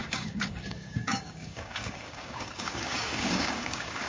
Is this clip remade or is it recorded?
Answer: remade